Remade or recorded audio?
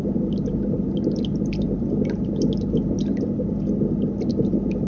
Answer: recorded